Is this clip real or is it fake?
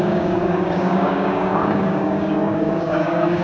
fake